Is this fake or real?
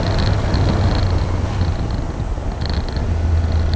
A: real